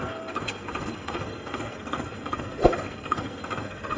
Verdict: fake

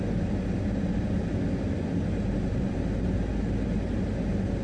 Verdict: real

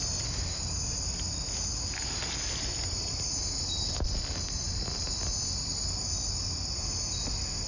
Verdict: real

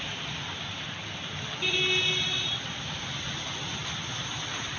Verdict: real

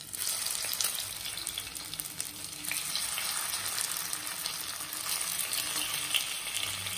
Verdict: real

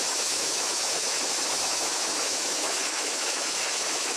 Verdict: fake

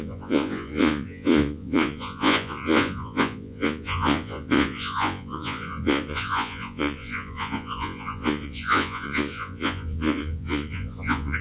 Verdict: fake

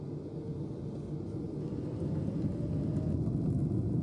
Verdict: real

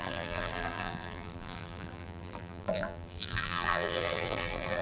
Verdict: fake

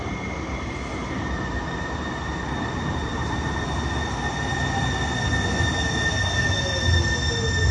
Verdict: real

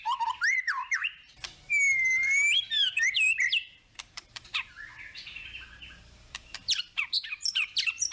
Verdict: fake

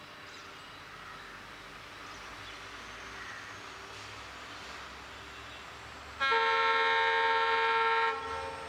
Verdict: real